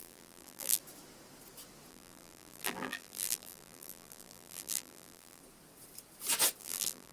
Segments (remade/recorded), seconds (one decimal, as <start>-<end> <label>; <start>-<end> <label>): 0.0-0.8 remade; 0.8-1.9 recorded; 1.9-5.4 remade; 5.4-6.6 recorded; 6.6-7.1 remade